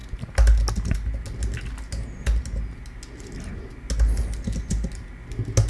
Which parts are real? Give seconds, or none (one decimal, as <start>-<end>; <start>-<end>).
0.0-5.7